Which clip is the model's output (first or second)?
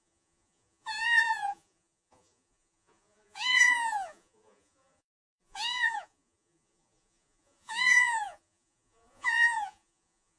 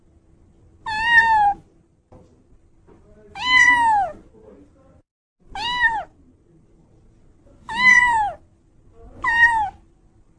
first